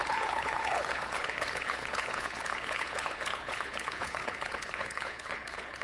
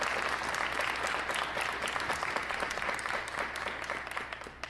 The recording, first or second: second